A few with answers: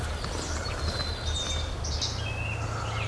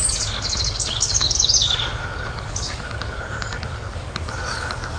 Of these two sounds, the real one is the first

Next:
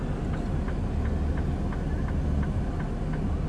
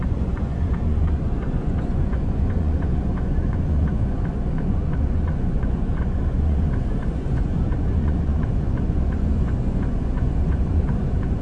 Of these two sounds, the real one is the first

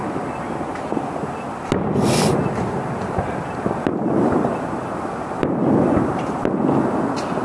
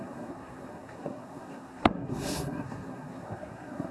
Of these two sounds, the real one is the first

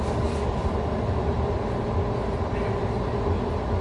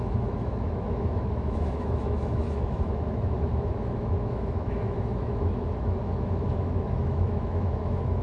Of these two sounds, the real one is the first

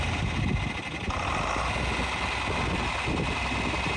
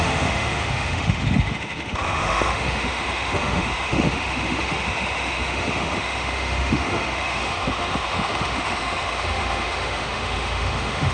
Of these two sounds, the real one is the first